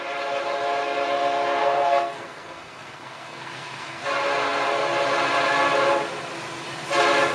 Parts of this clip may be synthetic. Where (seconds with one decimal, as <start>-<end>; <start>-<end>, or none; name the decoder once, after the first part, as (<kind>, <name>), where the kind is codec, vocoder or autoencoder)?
1.6-4.0 (codec, SNAC)